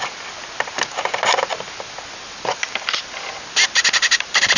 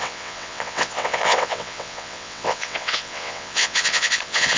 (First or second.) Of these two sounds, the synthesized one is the second